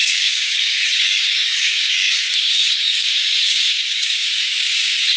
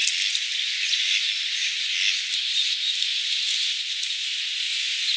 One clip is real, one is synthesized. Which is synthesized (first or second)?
first